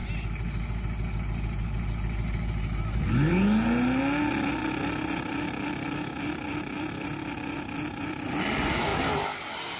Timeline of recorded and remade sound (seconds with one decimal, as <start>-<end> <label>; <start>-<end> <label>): 0.0-4.6 recorded; 4.6-8.4 remade; 8.4-8.9 recorded; 8.9-9.8 remade